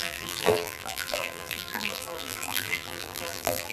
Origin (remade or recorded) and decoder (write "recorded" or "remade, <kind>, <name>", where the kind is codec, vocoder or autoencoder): remade, vocoder, BigVGAN v2